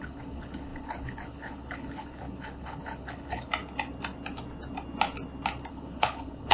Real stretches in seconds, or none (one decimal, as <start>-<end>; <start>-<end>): 3.5-5.7